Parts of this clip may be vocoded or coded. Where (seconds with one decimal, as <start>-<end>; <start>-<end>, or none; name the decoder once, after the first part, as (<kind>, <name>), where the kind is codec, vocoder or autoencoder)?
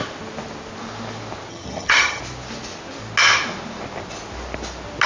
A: 1.5-2.2 (vocoder, HiFi-GAN)